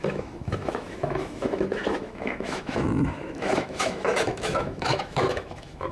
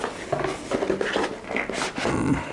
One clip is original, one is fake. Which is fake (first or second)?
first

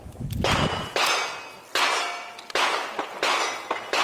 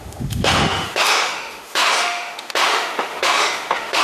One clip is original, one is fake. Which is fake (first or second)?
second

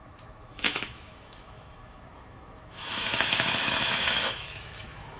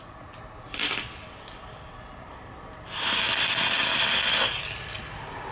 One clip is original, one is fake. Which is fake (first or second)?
first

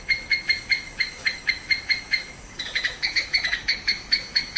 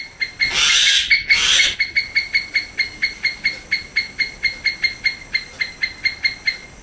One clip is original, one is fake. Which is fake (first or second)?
first